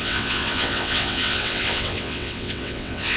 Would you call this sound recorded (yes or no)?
no